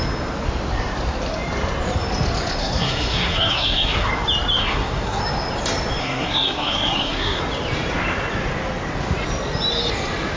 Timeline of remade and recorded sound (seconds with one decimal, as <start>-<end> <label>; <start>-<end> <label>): 0.0-2.6 recorded; 2.6-4.1 remade; 4.1-4.6 recorded; 4.6-5.2 remade; 5.2-6.0 recorded; 6.0-7.4 remade; 7.4-10.4 recorded

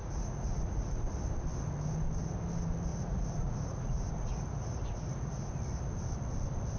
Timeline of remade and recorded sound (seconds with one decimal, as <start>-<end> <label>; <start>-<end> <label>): 0.0-1.0 remade; 1.0-2.9 recorded; 2.9-5.5 remade; 5.5-6.8 recorded

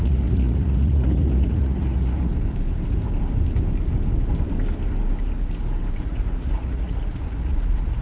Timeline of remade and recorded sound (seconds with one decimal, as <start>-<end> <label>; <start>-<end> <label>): 0.0-2.3 remade; 2.3-6.0 recorded; 6.0-8.0 remade

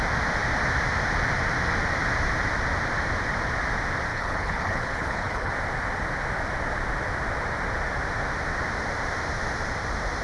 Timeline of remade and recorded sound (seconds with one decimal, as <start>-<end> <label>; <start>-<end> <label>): 0.0-4.1 recorded; 4.1-5.5 remade; 5.5-10.2 recorded

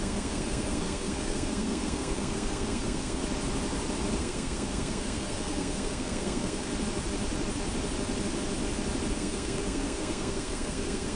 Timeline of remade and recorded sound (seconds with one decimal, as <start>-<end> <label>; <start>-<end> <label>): 0.0-3.2 remade; 3.2-4.2 recorded; 4.2-6.7 remade; 6.7-9.1 recorded; 9.1-11.2 remade